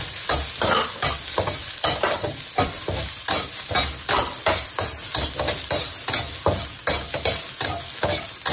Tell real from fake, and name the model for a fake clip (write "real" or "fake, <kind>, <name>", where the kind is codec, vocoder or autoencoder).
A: real